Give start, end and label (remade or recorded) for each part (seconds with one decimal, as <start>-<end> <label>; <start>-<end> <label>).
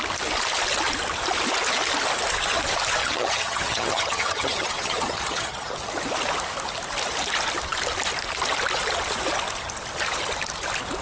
0.0-3.0 recorded; 3.0-5.9 remade; 5.9-11.0 recorded